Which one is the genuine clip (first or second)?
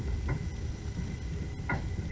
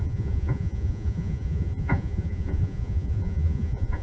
first